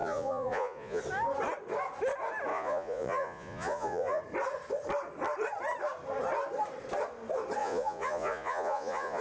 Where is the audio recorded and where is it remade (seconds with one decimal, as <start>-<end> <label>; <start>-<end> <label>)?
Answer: 0.0-1.0 remade; 1.0-2.5 recorded; 2.5-4.2 remade; 4.2-7.6 recorded; 7.6-9.2 remade